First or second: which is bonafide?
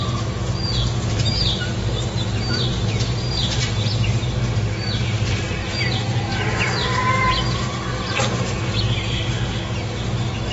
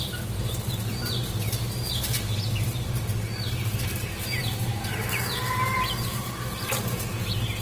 first